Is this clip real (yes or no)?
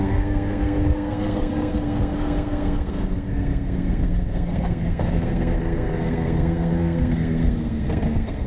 no